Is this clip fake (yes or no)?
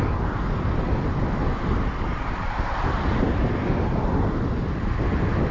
no